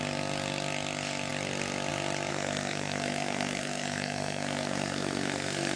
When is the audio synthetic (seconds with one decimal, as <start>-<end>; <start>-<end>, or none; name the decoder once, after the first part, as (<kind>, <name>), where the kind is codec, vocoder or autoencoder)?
2.3-5.8 (codec, SNAC)